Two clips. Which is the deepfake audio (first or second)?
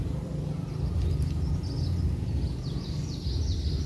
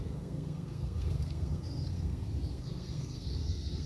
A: second